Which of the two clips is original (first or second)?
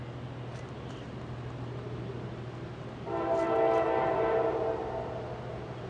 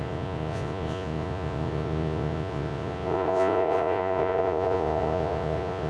first